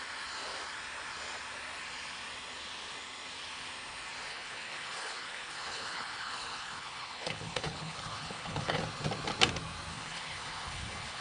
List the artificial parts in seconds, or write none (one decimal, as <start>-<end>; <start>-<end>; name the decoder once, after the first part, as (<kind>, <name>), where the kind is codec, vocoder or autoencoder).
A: 4.3-8.8 (codec, HILCodec); 9.9-11.2